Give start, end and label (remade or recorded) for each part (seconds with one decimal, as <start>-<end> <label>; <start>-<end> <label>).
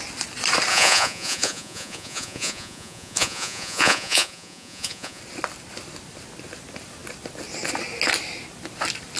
0.0-0.7 recorded; 0.7-5.2 remade; 5.2-9.2 recorded